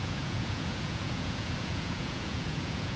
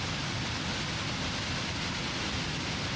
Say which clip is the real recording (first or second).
second